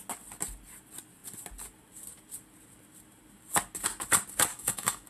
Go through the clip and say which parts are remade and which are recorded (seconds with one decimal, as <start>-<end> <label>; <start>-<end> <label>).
0.0-4.5 recorded; 4.5-5.1 remade